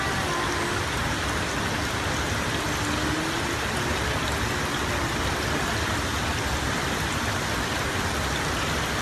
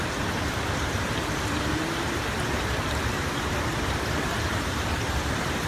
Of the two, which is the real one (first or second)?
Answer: first